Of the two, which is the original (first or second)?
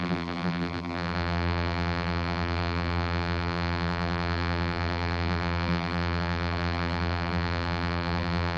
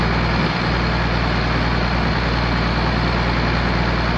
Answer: second